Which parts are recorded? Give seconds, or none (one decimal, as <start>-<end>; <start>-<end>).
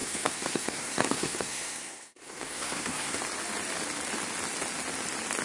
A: 3.2-5.4